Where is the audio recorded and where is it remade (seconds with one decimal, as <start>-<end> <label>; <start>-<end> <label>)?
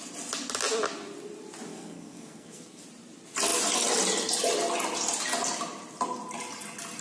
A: 0.0-1.7 recorded; 1.7-2.8 remade; 2.8-7.0 recorded